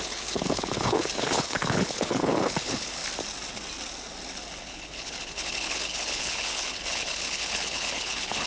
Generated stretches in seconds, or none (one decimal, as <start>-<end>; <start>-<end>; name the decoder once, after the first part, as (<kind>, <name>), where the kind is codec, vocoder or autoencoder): 0.0-3.0 (codec, HILCodec); 4.6-8.5